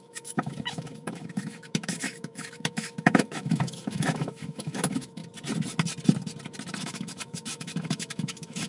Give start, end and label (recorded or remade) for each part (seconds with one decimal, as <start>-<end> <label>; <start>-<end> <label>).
0.0-5.2 remade; 5.2-6.8 recorded; 6.8-8.7 remade